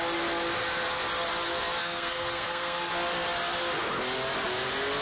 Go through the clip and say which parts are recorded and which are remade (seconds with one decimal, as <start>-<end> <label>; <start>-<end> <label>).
0.0-1.8 recorded; 1.8-2.9 remade; 2.9-5.0 recorded

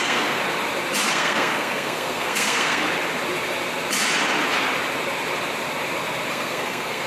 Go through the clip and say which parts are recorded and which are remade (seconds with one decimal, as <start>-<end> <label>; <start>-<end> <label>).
0.0-0.4 remade; 0.4-1.1 recorded; 1.1-2.8 remade; 2.8-6.3 recorded; 6.3-7.1 remade

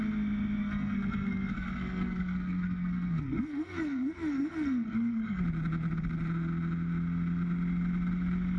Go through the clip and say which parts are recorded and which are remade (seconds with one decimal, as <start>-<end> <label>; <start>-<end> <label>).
0.0-0.6 recorded; 0.6-5.4 remade; 5.4-8.6 recorded

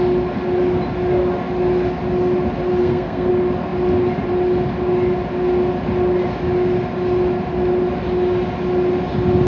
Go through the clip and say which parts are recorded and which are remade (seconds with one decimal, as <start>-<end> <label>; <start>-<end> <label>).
0.0-2.8 recorded; 2.8-3.3 remade; 3.3-9.5 recorded

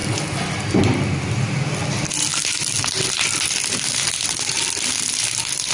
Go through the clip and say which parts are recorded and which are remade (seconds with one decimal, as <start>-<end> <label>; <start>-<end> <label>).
0.0-5.7 recorded